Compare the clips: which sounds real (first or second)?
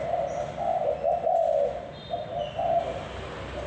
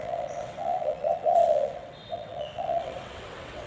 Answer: first